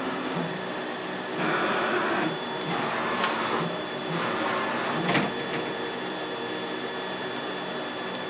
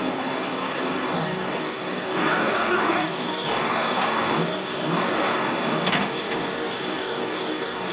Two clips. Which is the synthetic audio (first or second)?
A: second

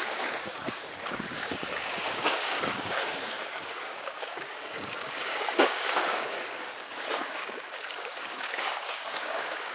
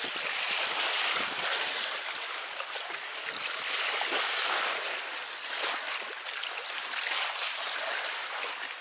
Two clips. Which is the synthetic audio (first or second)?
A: first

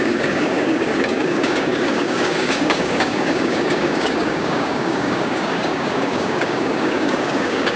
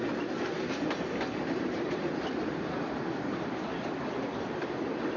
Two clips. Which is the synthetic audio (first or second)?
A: first